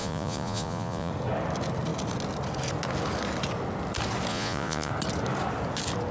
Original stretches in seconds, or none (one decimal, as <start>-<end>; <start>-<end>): 1.1-4.3; 4.9-6.1